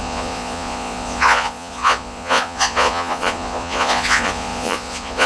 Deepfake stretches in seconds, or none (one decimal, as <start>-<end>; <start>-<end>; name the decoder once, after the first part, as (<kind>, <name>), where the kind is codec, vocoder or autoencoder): 0.0-5.3 (vocoder, Vocos)